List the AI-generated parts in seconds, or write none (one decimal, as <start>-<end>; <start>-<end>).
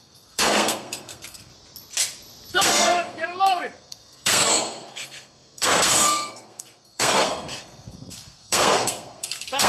0.0-1.5; 2.5-9.7